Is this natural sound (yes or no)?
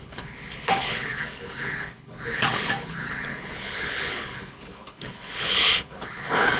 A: no